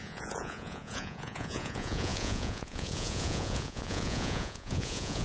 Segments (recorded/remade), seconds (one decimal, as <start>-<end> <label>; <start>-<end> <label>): 0.0-5.2 remade